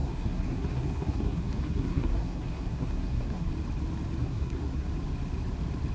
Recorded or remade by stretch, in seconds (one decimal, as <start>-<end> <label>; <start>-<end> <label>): 0.0-3.5 remade; 3.5-4.2 recorded; 4.2-4.9 remade; 4.9-5.9 recorded